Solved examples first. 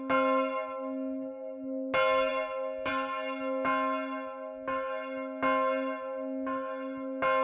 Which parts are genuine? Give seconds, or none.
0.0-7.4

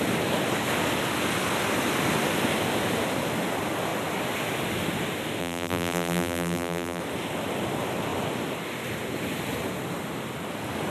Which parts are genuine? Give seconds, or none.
0.0-5.4; 7.0-10.9

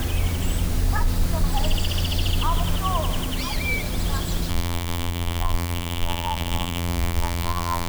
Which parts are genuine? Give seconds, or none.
0.0-4.5

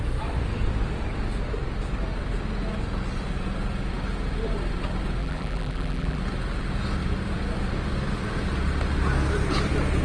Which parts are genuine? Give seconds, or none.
0.0-5.2; 6.2-10.0

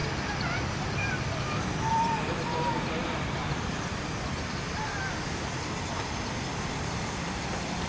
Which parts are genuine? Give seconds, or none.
none

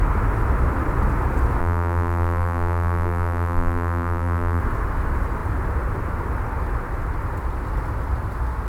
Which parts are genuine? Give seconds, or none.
0.0-1.6; 4.6-8.7

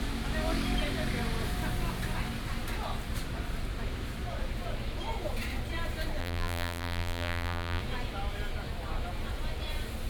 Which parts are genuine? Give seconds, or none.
0.0-6.2; 7.8-10.1

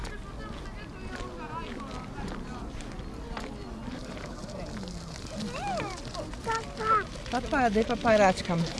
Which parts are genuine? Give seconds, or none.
0.0-8.8